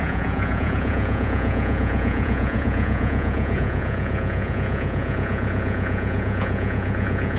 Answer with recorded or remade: remade